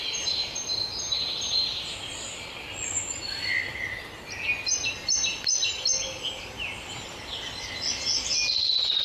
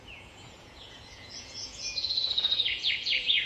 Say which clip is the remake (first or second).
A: second